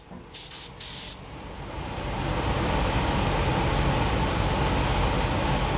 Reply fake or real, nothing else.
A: real